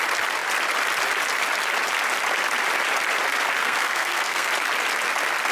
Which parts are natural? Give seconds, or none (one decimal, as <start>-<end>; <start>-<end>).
0.0-3.6; 4.5-5.5